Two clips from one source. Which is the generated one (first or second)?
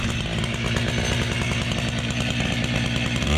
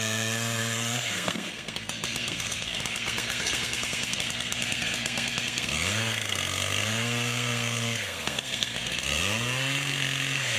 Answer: second